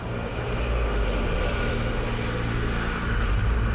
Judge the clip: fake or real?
real